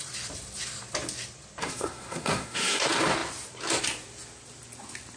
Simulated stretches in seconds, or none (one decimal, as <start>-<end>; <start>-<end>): 1.6-2.8